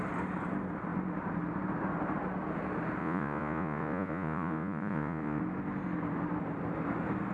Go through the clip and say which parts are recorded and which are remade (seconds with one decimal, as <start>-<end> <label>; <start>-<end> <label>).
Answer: 0.0-3.0 recorded; 3.0-5.4 remade; 5.4-7.3 recorded